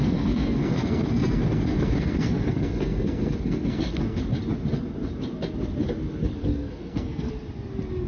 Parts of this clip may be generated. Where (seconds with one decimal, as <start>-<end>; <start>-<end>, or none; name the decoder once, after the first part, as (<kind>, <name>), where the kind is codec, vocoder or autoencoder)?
0.0-4.2 (codec, SNAC); 6.4-7.3